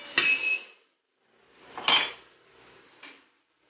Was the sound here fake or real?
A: real